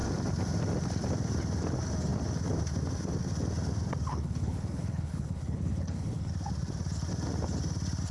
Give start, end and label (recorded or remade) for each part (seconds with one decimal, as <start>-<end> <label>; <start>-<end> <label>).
0.0-4.1 recorded; 4.1-6.3 remade; 6.3-8.1 recorded